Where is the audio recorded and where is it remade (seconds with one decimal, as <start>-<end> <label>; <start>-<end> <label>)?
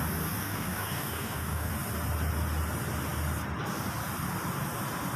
0.0-0.4 recorded; 0.4-1.7 remade; 1.7-5.2 recorded